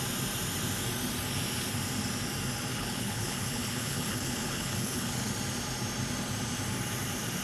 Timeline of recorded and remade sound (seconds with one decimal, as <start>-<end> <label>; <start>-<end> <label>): 0.0-2.7 recorded; 2.7-5.3 remade; 5.3-7.4 recorded